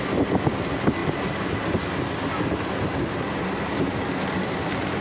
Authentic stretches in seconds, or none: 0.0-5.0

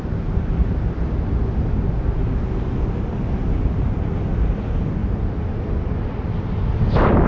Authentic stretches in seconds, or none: 0.0-7.3